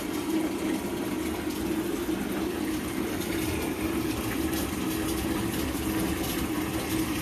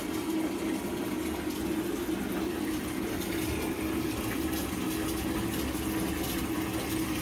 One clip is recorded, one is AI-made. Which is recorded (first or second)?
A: second